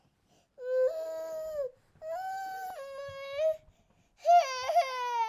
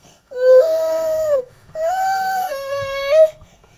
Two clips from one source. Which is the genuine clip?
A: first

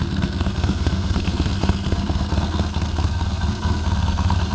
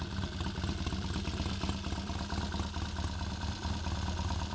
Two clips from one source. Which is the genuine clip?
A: second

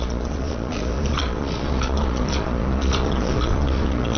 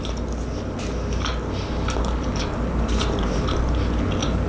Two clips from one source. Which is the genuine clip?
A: second